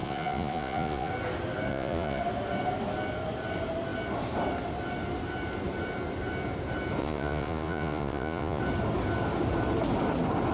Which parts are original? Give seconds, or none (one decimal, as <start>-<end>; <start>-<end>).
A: 1.1-1.7; 2.2-7.0; 8.6-10.5